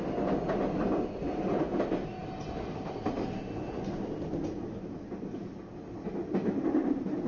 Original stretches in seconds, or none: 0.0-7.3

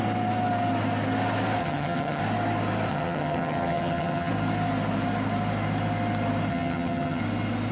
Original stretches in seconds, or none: 0.0-1.6; 2.2-2.9; 4.3-6.5; 7.2-7.7

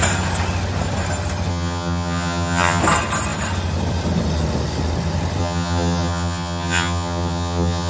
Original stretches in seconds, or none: 0.0-1.5; 2.8-5.4

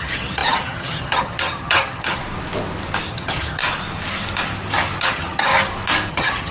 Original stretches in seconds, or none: 2.2-3.1; 3.6-5.0; 5.5-6.1

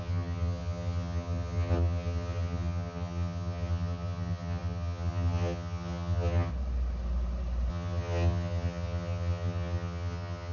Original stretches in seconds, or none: 6.5-7.7

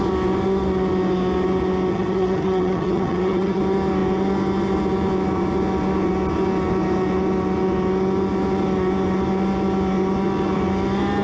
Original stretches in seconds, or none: 0.0-1.9; 3.6-11.2

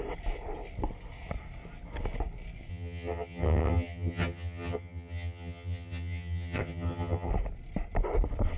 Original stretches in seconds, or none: 0.0-2.7; 7.3-8.6

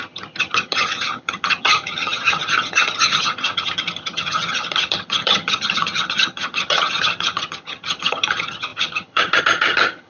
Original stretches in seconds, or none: none